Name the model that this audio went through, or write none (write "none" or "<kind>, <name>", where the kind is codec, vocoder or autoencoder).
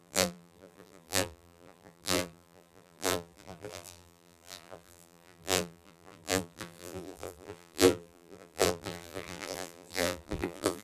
vocoder, BigVGAN v2